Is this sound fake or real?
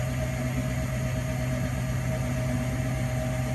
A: real